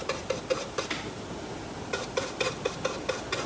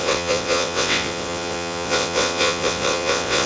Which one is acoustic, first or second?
first